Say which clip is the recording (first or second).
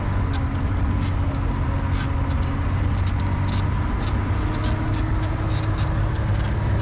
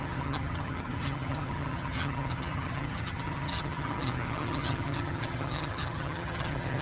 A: first